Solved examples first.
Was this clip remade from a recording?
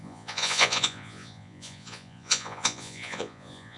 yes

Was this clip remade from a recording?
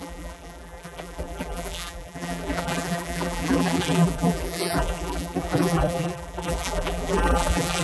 yes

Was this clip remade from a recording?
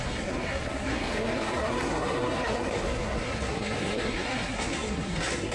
yes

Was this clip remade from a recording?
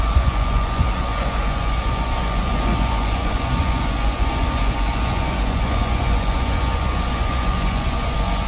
yes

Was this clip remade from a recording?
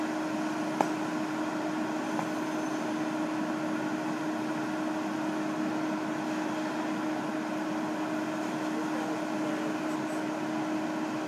no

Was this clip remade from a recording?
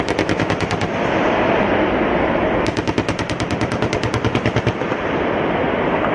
yes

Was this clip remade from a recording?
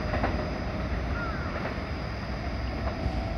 no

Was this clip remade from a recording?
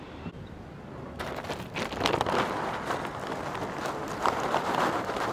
no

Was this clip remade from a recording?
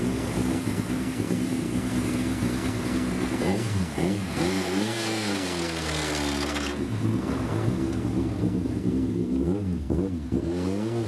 yes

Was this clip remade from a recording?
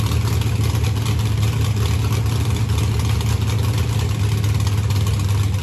no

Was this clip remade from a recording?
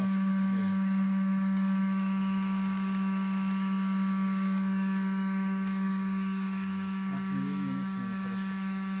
yes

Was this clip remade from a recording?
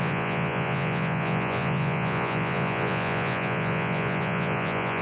yes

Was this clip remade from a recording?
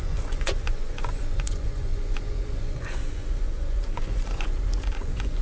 yes